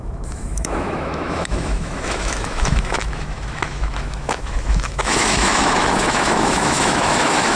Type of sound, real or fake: fake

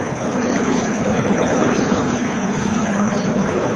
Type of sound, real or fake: fake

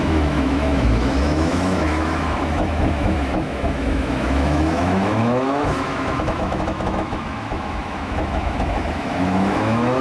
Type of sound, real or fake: fake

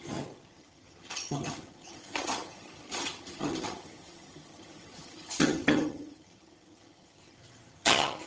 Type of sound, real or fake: fake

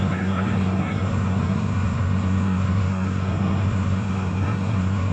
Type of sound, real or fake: fake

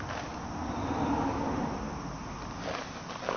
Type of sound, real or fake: real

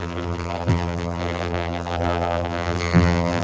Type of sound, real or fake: fake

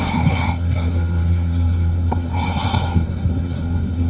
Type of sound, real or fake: fake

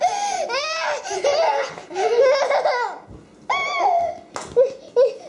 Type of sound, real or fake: real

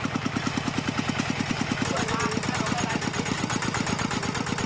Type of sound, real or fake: real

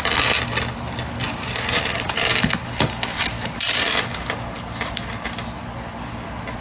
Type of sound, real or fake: real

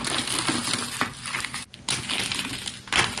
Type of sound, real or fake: real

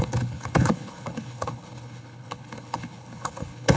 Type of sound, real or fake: fake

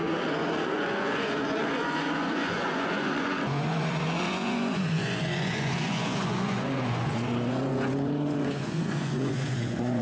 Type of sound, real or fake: fake